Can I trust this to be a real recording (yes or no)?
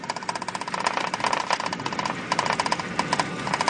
yes